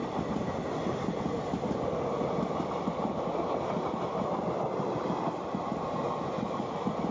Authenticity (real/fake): real